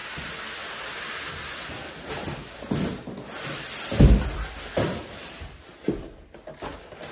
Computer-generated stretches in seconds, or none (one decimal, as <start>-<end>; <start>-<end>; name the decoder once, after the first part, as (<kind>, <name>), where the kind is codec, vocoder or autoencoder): none